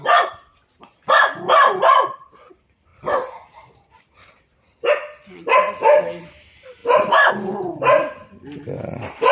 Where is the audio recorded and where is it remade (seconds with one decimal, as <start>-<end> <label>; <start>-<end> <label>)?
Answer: 0.0-2.9 recorded; 2.9-4.0 remade; 4.0-6.8 recorded; 6.8-7.3 remade; 7.3-9.3 recorded